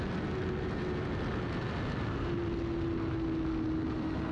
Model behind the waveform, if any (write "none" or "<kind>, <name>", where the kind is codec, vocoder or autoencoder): none